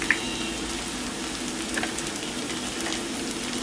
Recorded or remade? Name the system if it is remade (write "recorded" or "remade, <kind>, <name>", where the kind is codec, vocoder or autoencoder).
recorded